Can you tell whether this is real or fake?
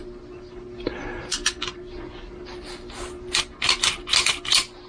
real